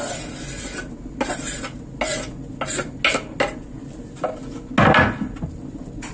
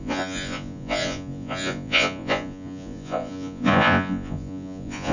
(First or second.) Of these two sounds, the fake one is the second